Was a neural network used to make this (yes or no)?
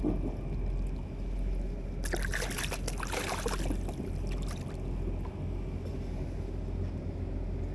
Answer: no